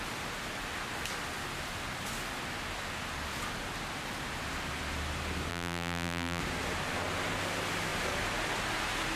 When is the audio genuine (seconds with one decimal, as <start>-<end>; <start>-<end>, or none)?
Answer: 0.0-5.5; 6.4-9.2